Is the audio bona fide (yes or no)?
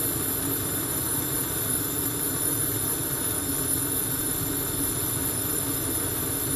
yes